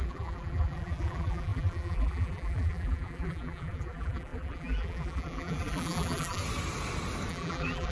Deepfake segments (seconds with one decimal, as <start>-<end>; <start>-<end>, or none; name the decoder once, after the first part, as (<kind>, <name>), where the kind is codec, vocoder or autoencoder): 0.0-6.4 (vocoder, BigVGAN v2); 7.3-7.9